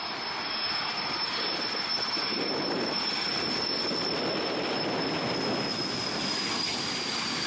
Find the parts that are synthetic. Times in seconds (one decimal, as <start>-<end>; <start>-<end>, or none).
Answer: none